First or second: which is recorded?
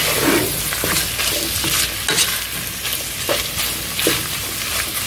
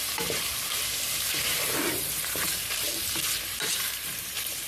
first